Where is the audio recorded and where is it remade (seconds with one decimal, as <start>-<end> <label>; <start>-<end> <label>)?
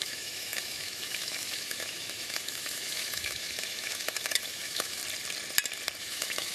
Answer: 0.0-5.0 remade; 5.0-6.0 recorded; 6.0-6.5 remade